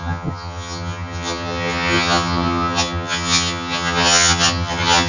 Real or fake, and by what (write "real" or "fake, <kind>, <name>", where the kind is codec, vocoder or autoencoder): fake, vocoder, HiFi-GAN